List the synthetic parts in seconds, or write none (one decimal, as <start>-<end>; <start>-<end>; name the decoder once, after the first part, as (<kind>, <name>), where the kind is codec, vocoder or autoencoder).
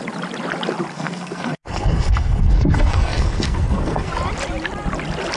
0.9-4.1 (codec, SNAC)